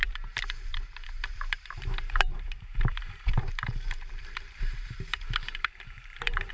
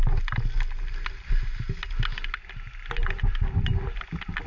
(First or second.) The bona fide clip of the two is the second